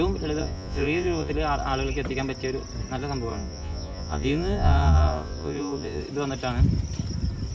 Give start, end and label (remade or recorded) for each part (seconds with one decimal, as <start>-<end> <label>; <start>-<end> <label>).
0.0-0.4 recorded; 0.4-1.3 remade; 1.3-3.3 recorded; 3.3-6.0 remade; 6.0-7.5 recorded